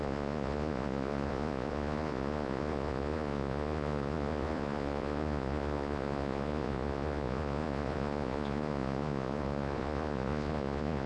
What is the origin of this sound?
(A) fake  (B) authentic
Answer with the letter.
A